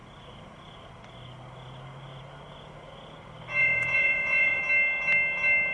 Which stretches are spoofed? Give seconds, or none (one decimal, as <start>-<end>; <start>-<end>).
3.6-4.6